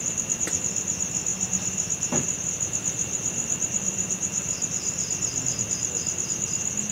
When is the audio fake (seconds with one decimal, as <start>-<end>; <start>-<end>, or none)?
1.3-5.4